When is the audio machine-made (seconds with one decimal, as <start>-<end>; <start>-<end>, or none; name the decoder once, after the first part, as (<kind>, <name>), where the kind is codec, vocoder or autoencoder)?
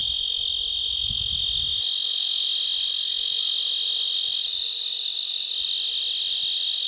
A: none